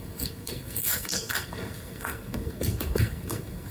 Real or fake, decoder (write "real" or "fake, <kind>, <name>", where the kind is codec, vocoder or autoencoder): fake, codec, SNAC